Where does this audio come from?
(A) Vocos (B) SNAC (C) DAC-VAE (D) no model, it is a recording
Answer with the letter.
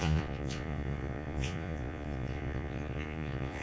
A